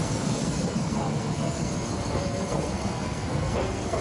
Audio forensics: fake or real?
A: fake